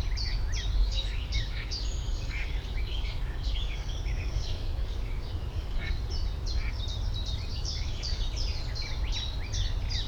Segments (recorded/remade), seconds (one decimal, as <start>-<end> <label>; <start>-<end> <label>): 0.0-0.8 recorded; 0.8-5.9 remade; 5.9-7.5 recorded; 7.5-8.2 remade; 8.2-10.1 recorded